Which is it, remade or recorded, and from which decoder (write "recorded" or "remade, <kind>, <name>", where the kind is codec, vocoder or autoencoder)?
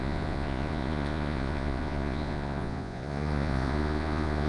remade, vocoder, Vocos